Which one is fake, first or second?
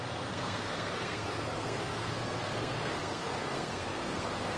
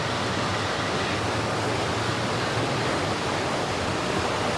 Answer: first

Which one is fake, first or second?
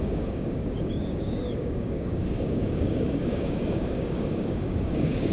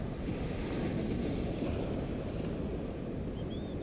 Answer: first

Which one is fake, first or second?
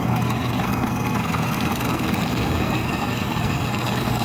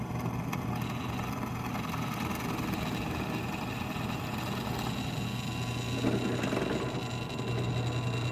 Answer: first